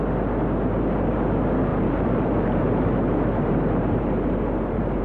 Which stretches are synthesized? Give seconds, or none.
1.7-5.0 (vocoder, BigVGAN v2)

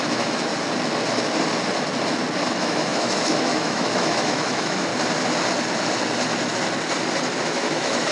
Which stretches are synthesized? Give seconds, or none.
0.0-0.5 (autoencoder, DAC-VAE); 2.5-4.9; 7.4-8.1

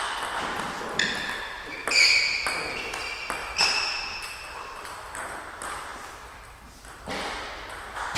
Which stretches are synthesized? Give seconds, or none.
3.4-5.3 (vocoder, BigVGAN v2)

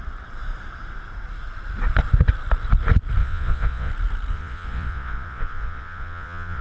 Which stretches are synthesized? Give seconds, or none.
3.2-3.9 (vocoder, Vocos); 4.3-6.6